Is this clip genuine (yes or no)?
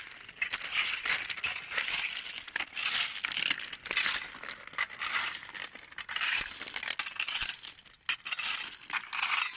yes